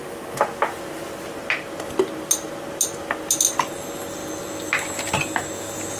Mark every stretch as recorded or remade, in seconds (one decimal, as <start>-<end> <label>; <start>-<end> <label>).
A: 0.0-6.0 recorded